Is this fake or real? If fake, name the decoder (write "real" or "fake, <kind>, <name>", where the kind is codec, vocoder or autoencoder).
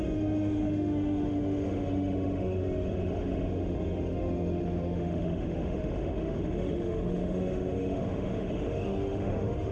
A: fake, autoencoder, DAC-VAE